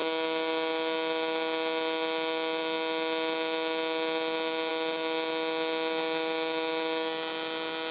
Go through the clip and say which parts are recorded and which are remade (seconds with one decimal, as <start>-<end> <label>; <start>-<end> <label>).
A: 0.0-7.9 recorded